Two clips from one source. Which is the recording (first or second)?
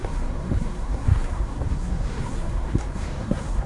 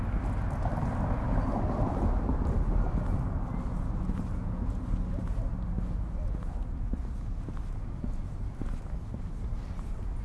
second